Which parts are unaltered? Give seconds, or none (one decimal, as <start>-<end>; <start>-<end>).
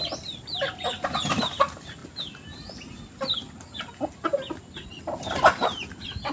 0.0-6.3